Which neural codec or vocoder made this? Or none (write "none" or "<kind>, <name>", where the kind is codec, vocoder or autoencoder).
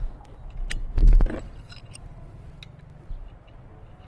none